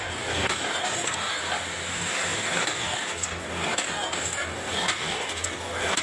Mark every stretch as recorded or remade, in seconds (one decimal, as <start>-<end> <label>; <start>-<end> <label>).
0.0-1.4 remade; 1.4-1.9 recorded; 1.9-6.0 remade